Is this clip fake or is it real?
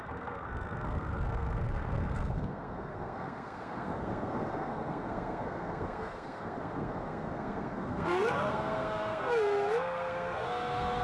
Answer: fake